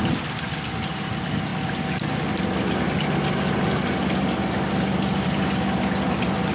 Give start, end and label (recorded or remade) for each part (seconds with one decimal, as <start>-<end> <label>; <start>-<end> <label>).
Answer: 0.0-6.5 recorded